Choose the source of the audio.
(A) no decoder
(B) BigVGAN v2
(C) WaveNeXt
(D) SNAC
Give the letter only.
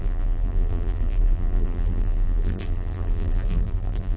B